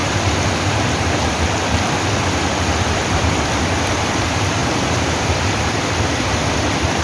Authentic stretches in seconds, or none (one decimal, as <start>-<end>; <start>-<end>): 0.0-2.0